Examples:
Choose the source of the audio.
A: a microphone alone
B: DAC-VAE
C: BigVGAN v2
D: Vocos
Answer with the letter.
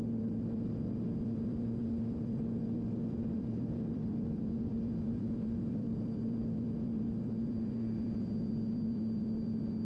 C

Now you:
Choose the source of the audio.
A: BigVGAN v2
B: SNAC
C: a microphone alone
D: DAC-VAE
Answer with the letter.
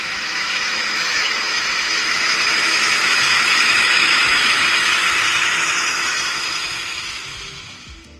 D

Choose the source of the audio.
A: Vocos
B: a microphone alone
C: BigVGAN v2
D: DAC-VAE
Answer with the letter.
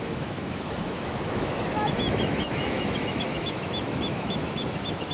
D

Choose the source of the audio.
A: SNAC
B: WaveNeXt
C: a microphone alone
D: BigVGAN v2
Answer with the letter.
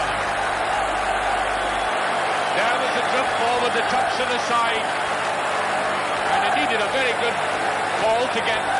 C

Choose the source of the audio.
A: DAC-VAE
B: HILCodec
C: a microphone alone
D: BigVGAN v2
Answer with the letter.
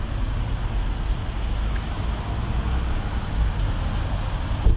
C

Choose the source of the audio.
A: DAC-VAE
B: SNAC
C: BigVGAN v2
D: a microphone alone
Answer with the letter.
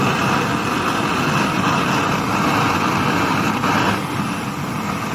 D